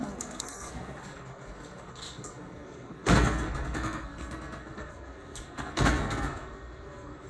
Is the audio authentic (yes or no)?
no